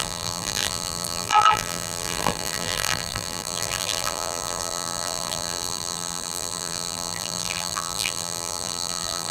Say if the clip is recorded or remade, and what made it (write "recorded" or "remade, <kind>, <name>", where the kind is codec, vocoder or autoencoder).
remade, vocoder, BigVGAN v2